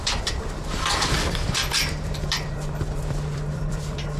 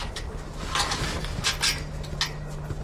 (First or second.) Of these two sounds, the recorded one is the second